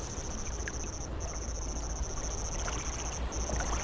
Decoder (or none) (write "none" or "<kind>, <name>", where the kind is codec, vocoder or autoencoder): none